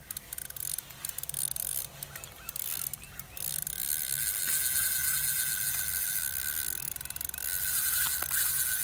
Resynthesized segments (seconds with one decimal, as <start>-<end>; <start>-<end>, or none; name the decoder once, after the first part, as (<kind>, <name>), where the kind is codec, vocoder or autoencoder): none